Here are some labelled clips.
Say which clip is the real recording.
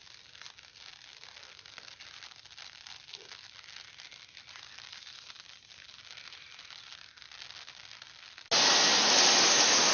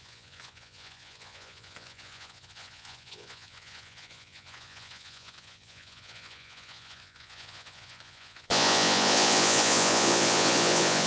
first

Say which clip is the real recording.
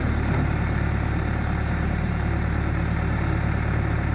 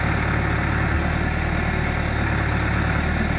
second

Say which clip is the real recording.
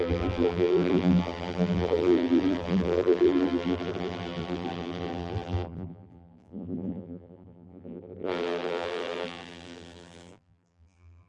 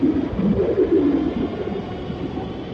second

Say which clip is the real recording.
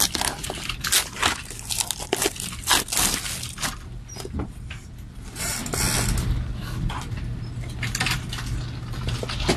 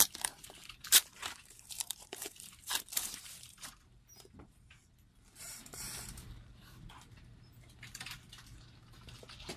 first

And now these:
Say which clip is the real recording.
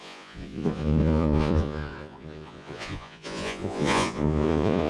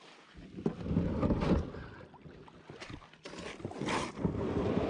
second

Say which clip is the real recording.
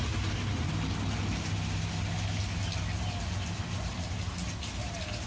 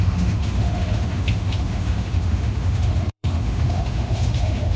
first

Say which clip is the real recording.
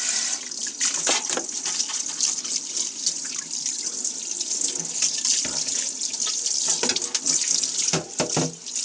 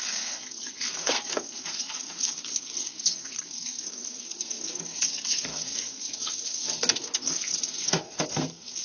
first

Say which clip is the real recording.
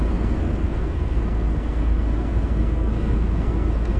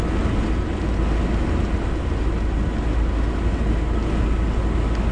second